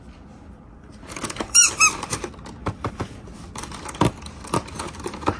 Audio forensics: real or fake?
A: fake